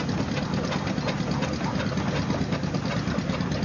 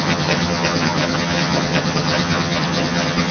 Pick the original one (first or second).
first